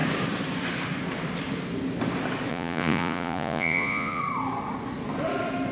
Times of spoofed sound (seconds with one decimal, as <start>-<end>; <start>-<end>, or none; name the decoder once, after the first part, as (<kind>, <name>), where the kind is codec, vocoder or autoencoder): 2.5-4.2 (vocoder, Vocos)